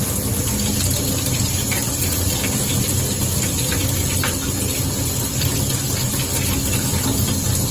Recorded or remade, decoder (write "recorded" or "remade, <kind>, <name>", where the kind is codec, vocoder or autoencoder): recorded